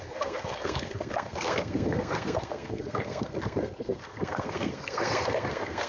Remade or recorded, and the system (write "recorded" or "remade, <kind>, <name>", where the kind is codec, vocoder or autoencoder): remade, codec, SNAC